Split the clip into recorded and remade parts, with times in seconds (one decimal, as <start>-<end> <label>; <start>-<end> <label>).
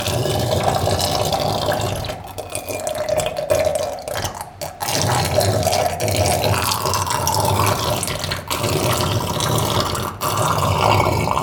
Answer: 0.0-11.4 recorded